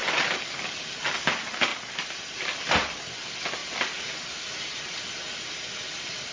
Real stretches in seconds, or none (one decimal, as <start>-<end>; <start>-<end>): 0.0-6.3